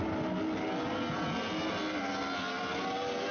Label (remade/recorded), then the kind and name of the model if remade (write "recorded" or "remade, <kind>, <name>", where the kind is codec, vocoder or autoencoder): recorded